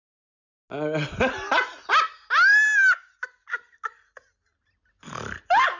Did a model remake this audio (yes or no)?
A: no